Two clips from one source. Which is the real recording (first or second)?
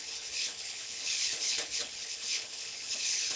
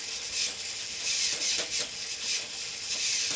second